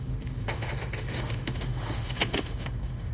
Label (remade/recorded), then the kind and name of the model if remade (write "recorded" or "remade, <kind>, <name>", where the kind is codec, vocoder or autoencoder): remade, autoencoder, DAC-VAE